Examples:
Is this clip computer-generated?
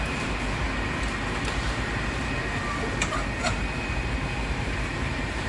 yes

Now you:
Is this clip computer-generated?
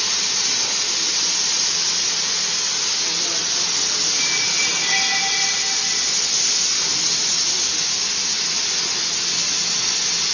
no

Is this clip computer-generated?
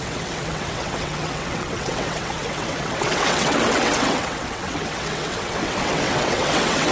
yes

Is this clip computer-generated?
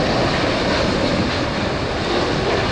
no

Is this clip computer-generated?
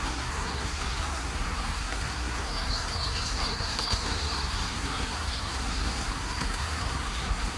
yes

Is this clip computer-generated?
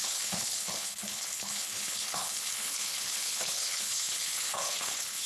yes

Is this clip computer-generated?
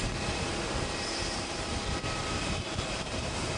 yes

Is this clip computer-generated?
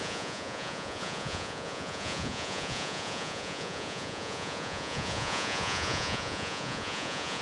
yes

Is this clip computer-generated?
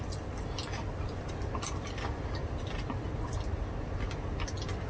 no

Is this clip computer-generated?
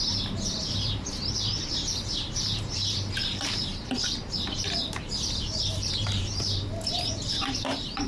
yes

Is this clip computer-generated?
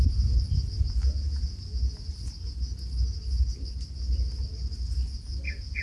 no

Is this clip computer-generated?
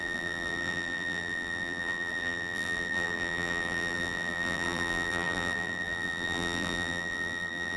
yes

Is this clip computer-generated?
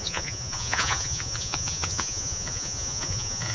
yes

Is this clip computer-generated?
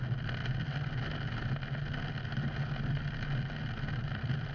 no